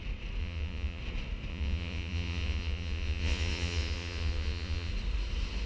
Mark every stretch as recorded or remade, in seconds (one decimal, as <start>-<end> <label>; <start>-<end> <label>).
0.0-0.4 recorded; 0.4-1.0 remade; 1.0-1.5 recorded; 1.5-4.9 remade; 4.9-5.7 recorded